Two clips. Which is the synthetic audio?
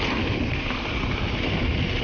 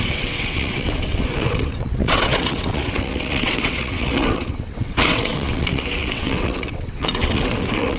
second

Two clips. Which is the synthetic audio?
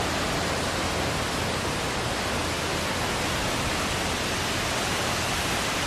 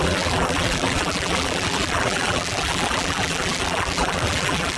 second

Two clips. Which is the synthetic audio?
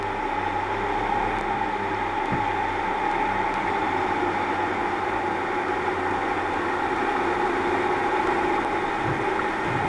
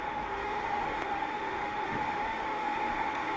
second